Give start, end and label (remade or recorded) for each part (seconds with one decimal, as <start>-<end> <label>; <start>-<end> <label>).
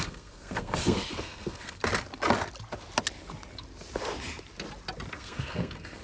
0.0-1.8 remade; 1.8-5.1 recorded; 5.1-6.0 remade